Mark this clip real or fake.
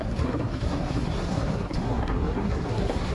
fake